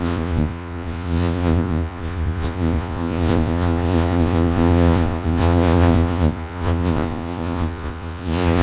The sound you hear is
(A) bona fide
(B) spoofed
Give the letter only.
B